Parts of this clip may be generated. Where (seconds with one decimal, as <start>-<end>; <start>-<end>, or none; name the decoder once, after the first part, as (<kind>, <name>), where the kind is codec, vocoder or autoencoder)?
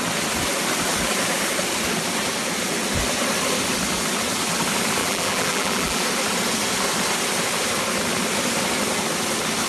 5.0-6.0 (vocoder, BigVGAN v2)